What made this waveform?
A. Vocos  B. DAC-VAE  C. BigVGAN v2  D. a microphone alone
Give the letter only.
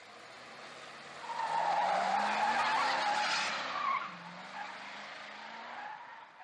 D